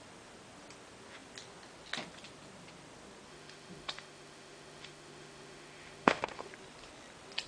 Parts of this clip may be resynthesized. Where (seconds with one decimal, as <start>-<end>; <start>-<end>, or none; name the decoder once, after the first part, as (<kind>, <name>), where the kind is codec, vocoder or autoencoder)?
3.3-6.5 (autoencoder, DAC-VAE)